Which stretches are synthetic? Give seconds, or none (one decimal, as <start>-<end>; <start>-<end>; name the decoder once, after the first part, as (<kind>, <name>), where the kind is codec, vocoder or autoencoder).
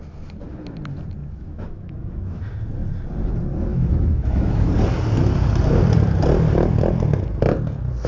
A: 1.2-2.4 (autoencoder, DAC-VAE); 3.7-4.7